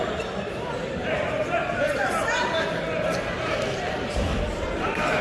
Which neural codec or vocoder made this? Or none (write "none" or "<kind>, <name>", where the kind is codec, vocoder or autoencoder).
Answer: vocoder, BigVGAN v2